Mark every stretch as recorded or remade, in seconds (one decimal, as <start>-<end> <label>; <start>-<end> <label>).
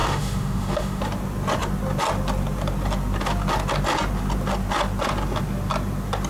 0.0-1.0 remade; 1.0-6.3 recorded